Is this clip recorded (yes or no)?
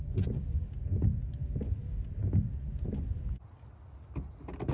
yes